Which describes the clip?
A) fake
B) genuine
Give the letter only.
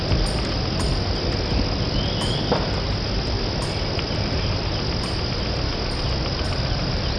B